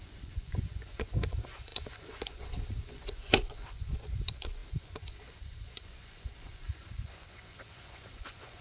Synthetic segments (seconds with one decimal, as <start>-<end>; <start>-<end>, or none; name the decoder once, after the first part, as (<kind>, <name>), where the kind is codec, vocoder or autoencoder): 0.0-8.6 (vocoder, Vocos)